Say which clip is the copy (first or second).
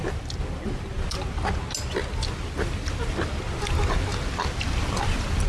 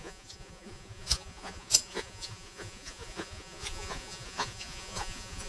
second